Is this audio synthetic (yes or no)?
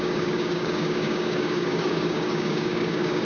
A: yes